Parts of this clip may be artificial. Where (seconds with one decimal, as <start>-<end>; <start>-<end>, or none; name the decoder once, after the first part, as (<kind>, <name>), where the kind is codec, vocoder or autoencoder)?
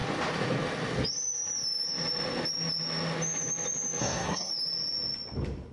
4.0-4.5 (codec, SNAC)